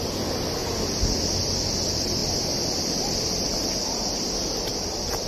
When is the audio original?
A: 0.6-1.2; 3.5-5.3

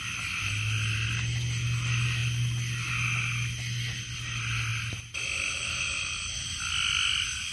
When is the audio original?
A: 0.0-7.5

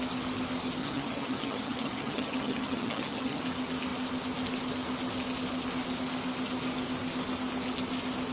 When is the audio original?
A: 0.0-0.8; 3.4-8.3

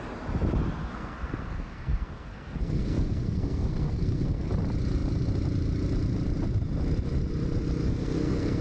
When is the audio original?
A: 0.0-0.8; 4.5-7.8

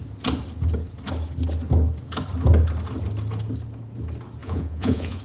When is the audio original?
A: 0.0-4.4

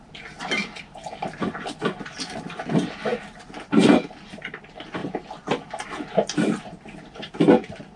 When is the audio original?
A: 5.0-6.1